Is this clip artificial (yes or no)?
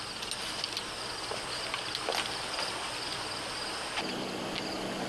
no